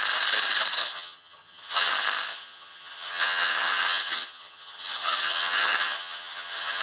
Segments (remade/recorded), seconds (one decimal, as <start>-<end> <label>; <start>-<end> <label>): 0.0-0.8 recorded; 0.8-1.9 remade; 1.9-2.3 recorded; 2.3-6.8 remade